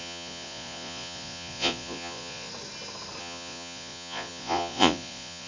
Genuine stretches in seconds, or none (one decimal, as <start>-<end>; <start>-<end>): 2.5-3.2